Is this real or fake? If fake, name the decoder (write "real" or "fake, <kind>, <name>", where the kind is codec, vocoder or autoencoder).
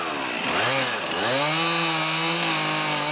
real